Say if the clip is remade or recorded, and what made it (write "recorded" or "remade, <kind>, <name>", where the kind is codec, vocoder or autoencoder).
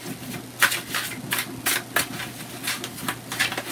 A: recorded